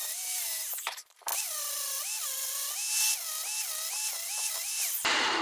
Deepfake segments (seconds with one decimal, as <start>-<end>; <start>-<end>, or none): 0.0-1.3; 4.5-5.4